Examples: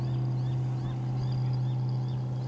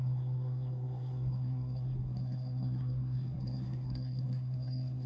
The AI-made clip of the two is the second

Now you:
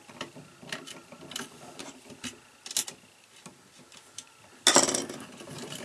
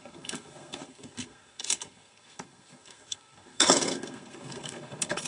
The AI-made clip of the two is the second